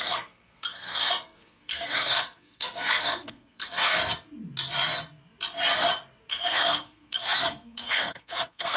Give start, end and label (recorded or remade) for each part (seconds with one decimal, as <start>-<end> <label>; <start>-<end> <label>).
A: 0.0-4.0 remade; 4.0-6.3 recorded; 6.3-8.8 remade

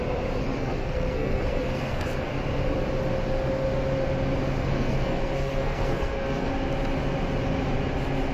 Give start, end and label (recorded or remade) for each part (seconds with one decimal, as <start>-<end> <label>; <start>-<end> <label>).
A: 0.0-0.4 recorded; 0.4-2.3 remade; 2.3-4.6 recorded; 4.6-6.5 remade; 6.5-8.3 recorded

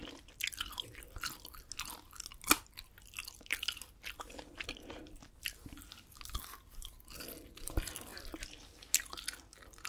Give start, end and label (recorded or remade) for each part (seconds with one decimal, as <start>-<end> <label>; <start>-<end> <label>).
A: 0.0-9.9 recorded

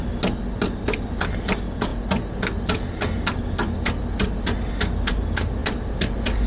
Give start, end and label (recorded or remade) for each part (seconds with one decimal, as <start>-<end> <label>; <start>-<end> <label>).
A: 0.0-6.5 recorded

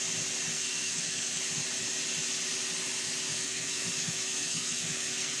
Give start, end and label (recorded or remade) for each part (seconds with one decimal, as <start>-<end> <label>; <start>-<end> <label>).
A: 0.0-0.5 recorded; 0.5-1.4 remade; 1.4-3.3 recorded; 3.3-5.4 remade

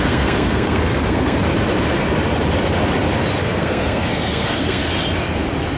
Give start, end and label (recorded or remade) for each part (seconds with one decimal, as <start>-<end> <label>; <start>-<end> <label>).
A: 0.0-1.4 remade; 1.4-3.4 recorded; 3.4-4.8 remade; 4.8-5.8 recorded